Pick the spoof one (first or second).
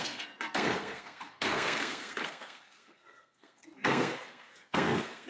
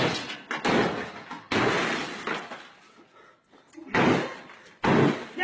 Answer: first